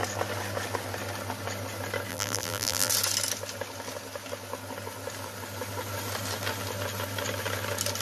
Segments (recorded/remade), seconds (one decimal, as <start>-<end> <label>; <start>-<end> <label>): 0.0-2.1 recorded; 2.1-2.9 remade; 2.9-8.0 recorded